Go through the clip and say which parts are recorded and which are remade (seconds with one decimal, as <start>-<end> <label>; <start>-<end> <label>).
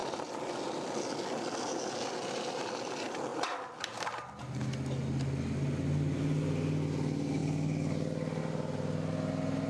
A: 0.0-3.3 recorded; 3.3-4.1 remade; 4.1-9.7 recorded